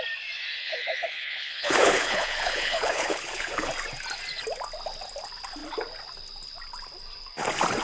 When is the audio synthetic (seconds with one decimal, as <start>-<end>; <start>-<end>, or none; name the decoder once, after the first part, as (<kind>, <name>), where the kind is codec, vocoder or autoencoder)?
0.6-3.7 (codec, HILCodec)